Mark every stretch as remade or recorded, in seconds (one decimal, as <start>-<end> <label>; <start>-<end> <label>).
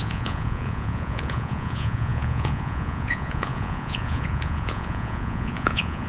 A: 0.0-6.1 remade